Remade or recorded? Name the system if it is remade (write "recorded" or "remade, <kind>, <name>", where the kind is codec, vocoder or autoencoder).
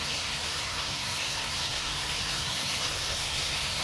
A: remade, codec, SNAC